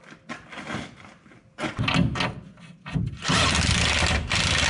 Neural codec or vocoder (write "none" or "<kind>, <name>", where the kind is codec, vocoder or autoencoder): none